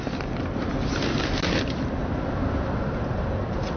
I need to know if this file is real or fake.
real